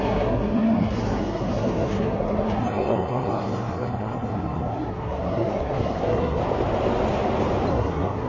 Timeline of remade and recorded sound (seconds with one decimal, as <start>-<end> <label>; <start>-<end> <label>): 0.0-6.4 remade; 6.4-7.7 recorded; 7.7-8.3 remade